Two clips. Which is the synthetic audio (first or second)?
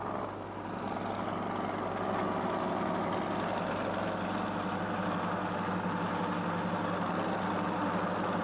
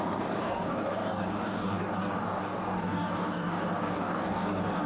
second